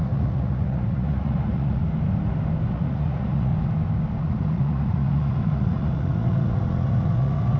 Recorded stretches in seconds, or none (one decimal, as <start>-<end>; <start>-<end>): 1.8-2.7; 3.5-4.2